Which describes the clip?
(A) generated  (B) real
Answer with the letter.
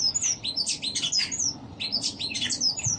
B